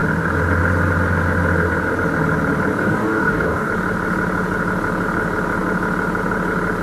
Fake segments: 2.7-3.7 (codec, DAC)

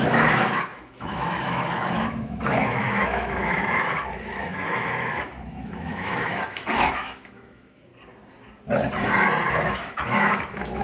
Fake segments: 0.0-7.9 (autoencoder, DAC-VAE); 9.5-10.8